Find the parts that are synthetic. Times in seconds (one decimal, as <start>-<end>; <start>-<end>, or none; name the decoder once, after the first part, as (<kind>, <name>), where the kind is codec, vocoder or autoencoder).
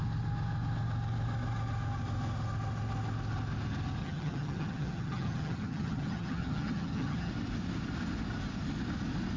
4.0-7.3 (vocoder, HiFi-GAN)